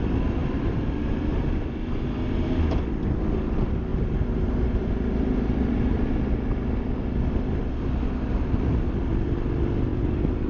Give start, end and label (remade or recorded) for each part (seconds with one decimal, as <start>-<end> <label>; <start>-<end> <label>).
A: 0.0-0.4 recorded; 0.4-1.4 remade; 1.4-3.9 recorded; 3.9-6.2 remade; 6.2-10.5 recorded